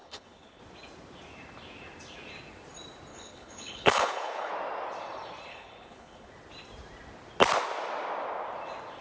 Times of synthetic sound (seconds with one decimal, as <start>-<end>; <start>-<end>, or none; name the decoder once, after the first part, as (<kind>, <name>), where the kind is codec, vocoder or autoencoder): 0.0-0.6 (codec, HILCodec); 3.1-4.5; 5.5-6.3